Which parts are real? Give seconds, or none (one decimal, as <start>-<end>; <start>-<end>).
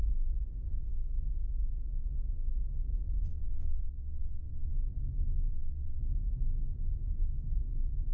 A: 0.0-3.3; 4.7-5.5; 6.0-8.1